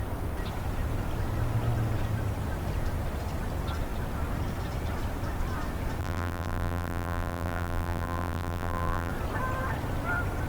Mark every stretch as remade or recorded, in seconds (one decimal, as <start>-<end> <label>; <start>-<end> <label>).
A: 0.0-6.0 recorded; 6.0-9.1 remade; 9.1-10.5 recorded